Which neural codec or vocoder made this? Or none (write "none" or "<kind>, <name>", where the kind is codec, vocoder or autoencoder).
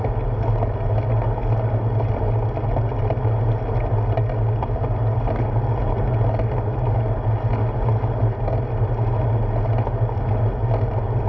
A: none